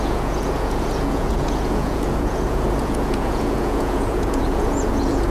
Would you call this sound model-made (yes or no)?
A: yes